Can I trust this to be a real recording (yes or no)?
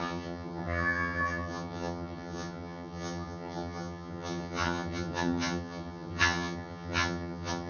no